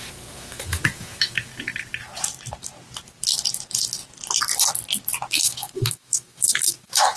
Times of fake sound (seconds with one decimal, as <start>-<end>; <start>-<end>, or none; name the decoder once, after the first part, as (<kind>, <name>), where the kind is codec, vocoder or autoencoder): 0.0-1.5 (autoencoder, DAC-VAE); 5.3-7.2